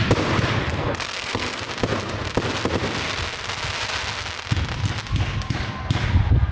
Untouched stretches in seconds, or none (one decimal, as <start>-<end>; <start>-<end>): 0.0-0.6; 1.6-6.5

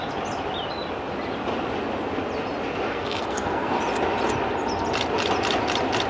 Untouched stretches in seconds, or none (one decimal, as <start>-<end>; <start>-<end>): 0.0-2.9; 3.8-6.1

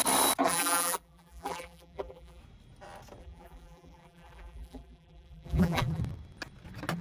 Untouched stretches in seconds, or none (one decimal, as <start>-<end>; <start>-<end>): 0.0-0.4; 2.4-3.2; 6.0-7.0

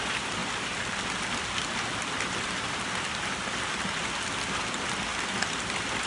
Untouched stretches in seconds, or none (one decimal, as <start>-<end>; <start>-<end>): 0.0-6.1